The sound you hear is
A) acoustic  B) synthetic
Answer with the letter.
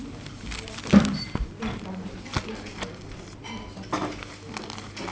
A